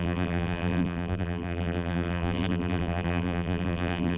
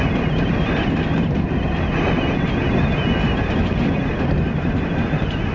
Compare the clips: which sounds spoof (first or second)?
first